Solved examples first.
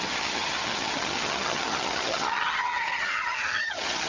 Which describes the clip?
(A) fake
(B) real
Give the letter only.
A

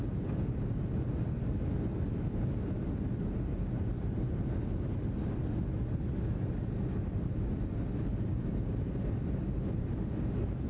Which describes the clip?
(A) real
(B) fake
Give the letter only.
A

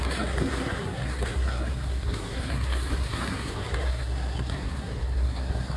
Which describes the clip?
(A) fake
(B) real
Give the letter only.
A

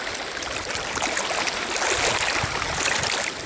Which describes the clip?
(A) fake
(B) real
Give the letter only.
B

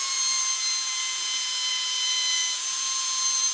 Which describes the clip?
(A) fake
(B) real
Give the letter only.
A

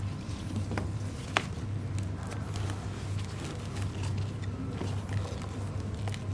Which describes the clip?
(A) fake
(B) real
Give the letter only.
B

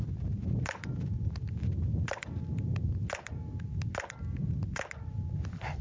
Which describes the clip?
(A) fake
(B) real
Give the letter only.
B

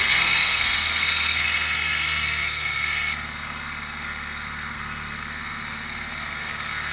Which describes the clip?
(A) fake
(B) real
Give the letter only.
A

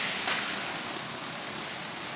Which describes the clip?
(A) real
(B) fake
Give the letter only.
A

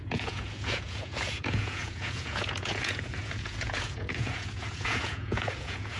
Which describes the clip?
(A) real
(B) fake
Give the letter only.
B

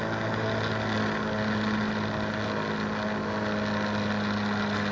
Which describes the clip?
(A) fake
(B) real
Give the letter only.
B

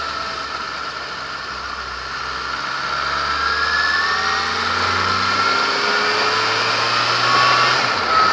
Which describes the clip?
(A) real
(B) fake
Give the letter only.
A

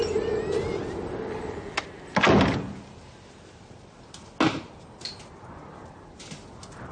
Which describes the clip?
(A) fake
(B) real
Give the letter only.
B